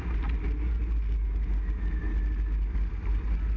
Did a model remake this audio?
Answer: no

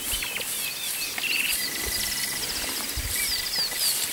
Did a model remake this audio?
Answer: no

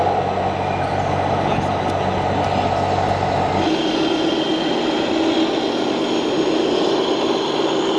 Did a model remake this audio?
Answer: no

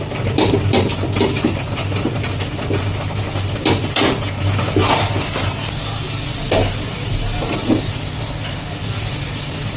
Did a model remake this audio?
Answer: no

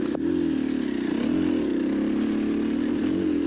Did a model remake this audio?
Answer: no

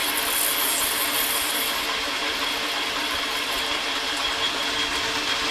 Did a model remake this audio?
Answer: no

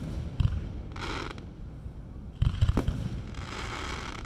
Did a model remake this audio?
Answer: no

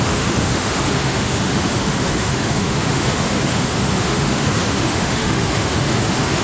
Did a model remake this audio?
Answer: yes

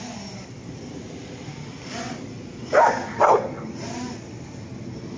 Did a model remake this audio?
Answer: no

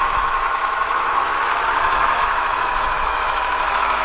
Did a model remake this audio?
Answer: yes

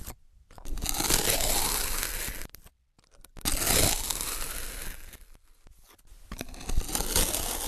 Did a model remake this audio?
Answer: no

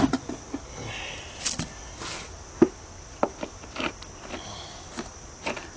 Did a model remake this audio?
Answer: no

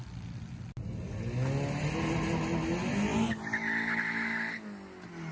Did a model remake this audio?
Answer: no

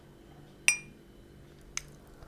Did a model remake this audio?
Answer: no